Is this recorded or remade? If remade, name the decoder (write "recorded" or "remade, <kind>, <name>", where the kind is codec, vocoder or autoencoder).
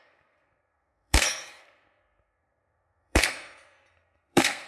remade, codec, SNAC